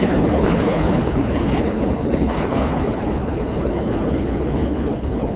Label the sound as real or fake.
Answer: fake